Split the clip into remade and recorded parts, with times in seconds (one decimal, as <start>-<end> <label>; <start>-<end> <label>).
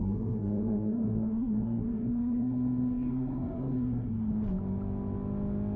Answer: 0.0-4.3 remade; 4.3-5.8 recorded